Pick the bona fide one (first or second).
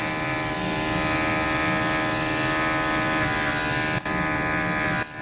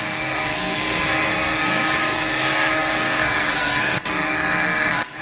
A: first